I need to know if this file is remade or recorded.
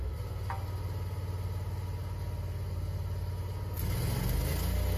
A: recorded